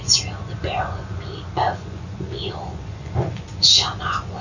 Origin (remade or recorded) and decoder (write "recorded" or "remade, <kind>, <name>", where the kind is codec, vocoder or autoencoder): remade, vocoder, Vocos